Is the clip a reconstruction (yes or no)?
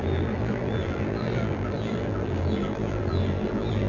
yes